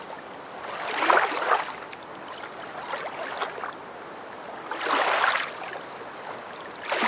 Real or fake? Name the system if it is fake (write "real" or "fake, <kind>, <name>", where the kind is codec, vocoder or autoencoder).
real